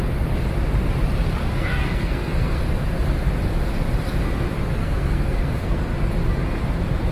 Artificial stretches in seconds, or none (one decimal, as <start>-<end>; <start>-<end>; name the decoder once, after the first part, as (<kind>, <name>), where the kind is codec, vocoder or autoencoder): 1.4-2.6 (codec, SNAC); 4.8-5.8